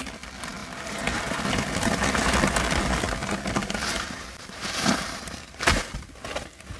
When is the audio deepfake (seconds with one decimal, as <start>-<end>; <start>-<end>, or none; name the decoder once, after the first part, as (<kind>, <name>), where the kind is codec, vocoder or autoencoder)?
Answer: 0.6-1.4 (vocoder, BigVGAN v2); 3.6-5.8